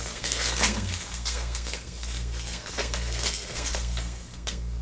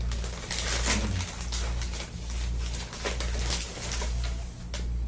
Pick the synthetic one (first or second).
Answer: first